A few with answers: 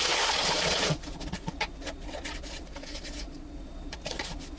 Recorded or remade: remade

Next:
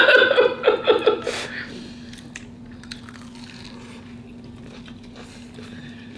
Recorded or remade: recorded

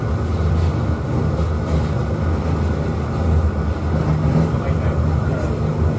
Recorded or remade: recorded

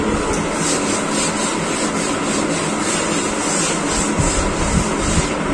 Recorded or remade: recorded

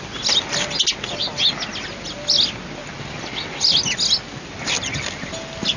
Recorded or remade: recorded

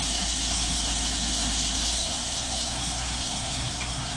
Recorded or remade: remade